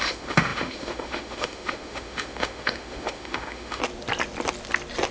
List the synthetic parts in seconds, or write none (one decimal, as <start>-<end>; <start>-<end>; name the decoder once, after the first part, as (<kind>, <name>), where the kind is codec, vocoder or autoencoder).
0.0-3.8 (autoencoder, DAC-VAE)